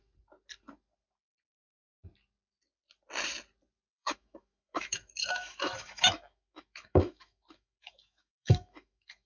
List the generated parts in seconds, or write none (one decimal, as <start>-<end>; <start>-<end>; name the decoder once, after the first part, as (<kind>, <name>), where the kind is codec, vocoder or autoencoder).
3.9-9.3 (autoencoder, DAC-VAE)